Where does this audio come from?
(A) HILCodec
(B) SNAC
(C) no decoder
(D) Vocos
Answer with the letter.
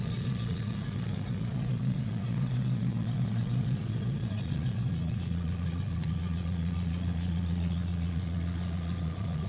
D